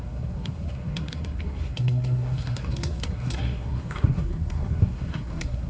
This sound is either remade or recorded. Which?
remade